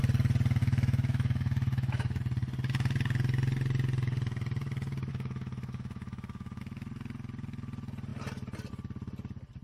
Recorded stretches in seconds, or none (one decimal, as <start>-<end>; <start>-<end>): 0.0-0.6; 2.2-5.1; 6.6-9.6